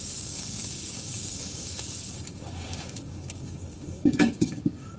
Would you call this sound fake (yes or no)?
yes